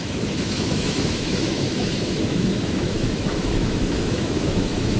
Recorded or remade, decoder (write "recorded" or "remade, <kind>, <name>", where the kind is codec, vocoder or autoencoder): remade, autoencoder, DAC-VAE